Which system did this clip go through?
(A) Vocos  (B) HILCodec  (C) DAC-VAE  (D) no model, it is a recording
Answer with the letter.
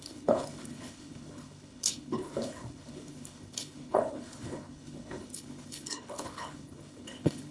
B